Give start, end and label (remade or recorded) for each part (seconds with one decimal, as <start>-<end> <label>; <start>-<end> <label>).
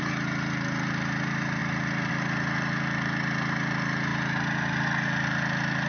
0.0-5.9 recorded